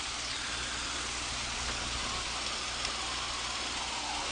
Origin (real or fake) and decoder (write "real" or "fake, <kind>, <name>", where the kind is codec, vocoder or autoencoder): real